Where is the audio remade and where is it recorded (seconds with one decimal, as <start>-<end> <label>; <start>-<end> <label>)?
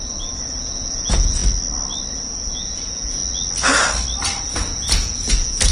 0.0-1.4 remade; 1.4-2.1 recorded; 2.1-3.2 remade; 3.2-4.4 recorded; 4.4-5.7 remade